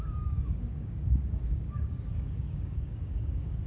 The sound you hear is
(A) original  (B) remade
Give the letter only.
B